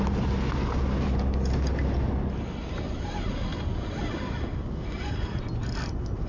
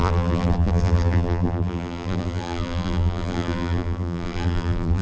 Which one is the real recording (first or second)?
first